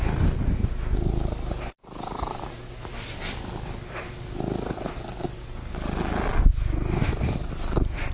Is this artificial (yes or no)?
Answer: no